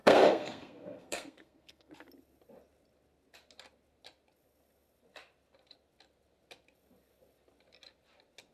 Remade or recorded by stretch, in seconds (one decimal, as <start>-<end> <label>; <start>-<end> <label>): 0.0-1.9 remade; 1.9-8.5 recorded

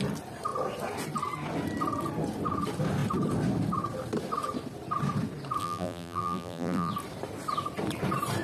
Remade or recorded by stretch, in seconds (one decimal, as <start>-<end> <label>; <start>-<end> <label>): 0.0-5.6 recorded; 5.6-6.9 remade; 6.9-8.4 recorded